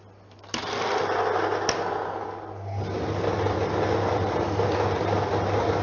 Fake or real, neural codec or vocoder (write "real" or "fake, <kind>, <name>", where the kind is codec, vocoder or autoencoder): real